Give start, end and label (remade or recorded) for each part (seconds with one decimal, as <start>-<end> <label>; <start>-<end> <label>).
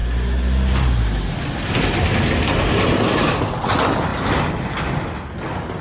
0.0-5.8 recorded